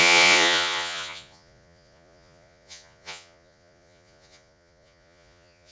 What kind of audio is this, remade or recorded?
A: remade